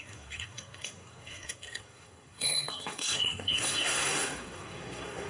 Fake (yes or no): yes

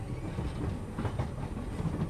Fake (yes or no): no